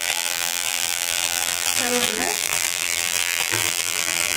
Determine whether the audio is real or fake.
fake